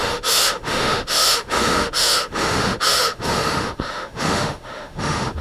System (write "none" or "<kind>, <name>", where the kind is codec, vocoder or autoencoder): autoencoder, DAC-VAE